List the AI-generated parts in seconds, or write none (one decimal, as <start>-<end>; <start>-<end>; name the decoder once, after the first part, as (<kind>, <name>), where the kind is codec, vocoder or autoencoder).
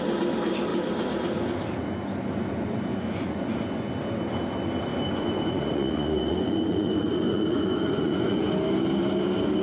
2.9-3.9 (vocoder, Vocos); 4.9-8.5